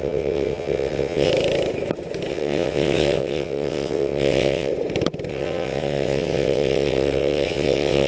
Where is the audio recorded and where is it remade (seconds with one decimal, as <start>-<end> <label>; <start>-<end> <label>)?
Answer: 0.0-1.3 remade; 1.3-2.3 recorded; 2.3-4.7 remade; 4.7-5.3 recorded; 5.3-8.1 remade